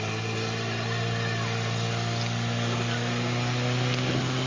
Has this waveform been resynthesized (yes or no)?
no